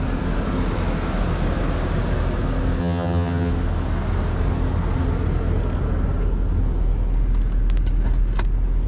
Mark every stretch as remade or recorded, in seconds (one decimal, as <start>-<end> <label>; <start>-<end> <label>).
0.0-2.8 recorded; 2.8-3.5 remade; 3.5-8.9 recorded